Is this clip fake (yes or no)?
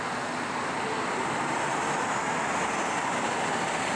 no